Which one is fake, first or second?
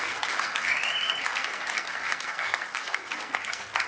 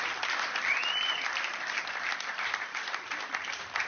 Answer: first